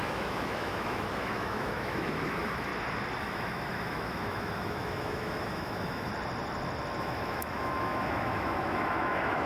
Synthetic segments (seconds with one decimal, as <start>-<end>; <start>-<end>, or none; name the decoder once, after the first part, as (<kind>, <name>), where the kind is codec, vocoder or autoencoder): 0.0-2.7 (autoencoder, DAC-VAE); 3.2-6.1; 7.0-9.5